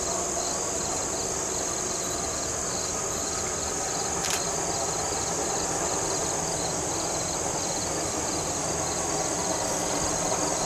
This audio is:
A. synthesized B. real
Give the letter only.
B